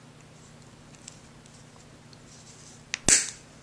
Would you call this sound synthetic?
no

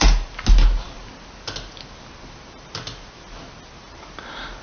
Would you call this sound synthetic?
no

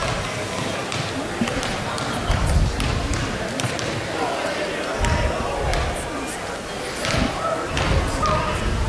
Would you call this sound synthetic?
no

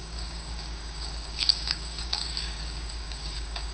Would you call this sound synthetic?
yes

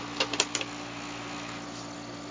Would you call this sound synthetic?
no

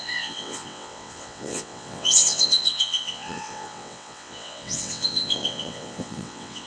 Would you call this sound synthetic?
yes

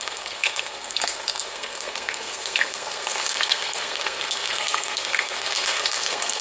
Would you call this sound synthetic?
yes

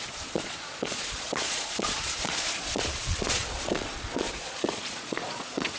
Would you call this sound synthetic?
yes